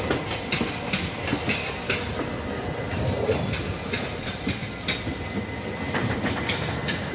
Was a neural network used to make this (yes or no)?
no